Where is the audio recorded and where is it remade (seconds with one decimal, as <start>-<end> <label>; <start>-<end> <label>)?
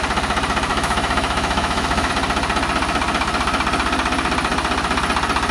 0.0-0.7 recorded; 0.7-2.1 remade; 2.1-5.5 recorded